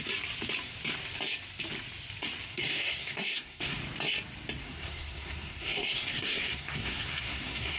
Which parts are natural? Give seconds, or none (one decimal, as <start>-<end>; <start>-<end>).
0.0-2.5; 3.8-4.6